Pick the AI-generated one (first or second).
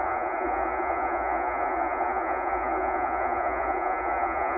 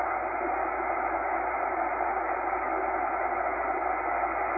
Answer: first